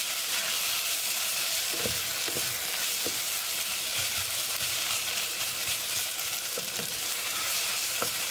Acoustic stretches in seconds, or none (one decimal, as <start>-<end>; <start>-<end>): 2.1-2.9